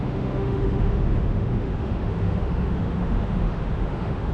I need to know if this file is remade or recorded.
remade